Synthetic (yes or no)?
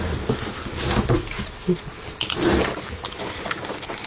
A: no